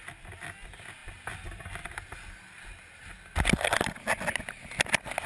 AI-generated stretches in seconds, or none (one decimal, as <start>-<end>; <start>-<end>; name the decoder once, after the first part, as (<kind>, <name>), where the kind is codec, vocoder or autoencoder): none